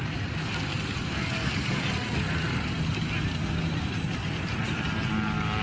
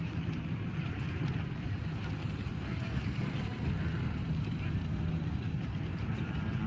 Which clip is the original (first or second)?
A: first